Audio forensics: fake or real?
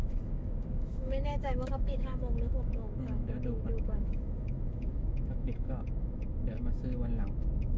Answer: fake